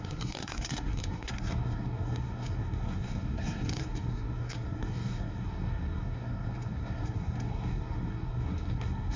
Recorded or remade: remade